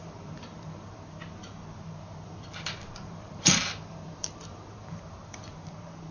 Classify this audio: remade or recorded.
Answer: remade